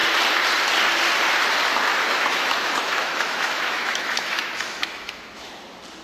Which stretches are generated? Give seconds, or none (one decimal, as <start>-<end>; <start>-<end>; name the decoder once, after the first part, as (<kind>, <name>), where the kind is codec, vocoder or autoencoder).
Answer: 1.9-5.5 (autoencoder, DAC-VAE)